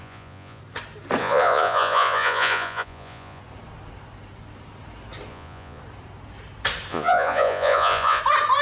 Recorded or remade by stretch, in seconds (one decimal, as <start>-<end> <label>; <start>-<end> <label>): 0.0-0.6 remade; 0.6-1.2 recorded; 1.2-3.4 remade; 3.4-5.3 recorded; 5.3-5.8 remade; 5.8-6.9 recorded; 6.9-8.2 remade; 8.2-8.6 recorded

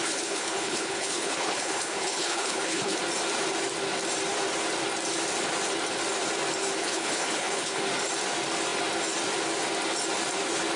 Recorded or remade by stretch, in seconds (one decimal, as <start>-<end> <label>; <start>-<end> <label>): 0.0-3.0 remade; 3.0-6.8 recorded; 6.8-7.8 remade; 7.8-10.8 recorded

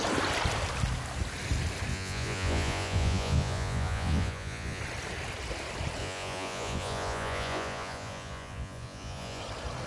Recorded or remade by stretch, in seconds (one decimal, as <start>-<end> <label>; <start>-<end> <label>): 0.0-1.9 recorded; 1.9-4.8 remade; 4.8-6.0 recorded; 6.0-9.4 remade; 9.4-9.9 recorded